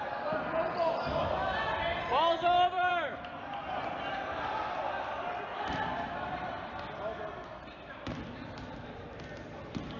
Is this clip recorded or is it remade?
remade